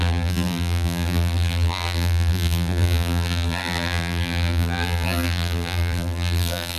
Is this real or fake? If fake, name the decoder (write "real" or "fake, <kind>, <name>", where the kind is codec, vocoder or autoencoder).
fake, vocoder, BigVGAN v2